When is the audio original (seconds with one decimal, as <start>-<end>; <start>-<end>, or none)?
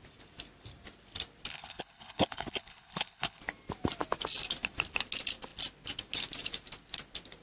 0.0-1.5; 3.4-7.4